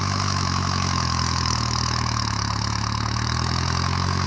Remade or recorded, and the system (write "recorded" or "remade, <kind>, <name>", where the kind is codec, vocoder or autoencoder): remade, autoencoder, DAC-VAE